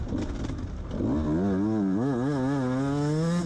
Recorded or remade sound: recorded